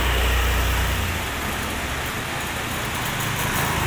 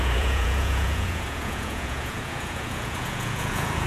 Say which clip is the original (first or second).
first